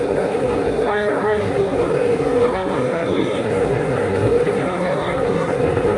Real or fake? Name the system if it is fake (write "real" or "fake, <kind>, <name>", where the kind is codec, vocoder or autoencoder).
fake, codec, SNAC